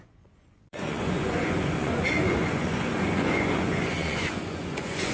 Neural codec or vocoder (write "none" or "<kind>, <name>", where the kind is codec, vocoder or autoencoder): vocoder, Vocos